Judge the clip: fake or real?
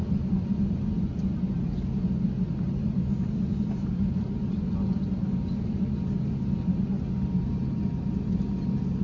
real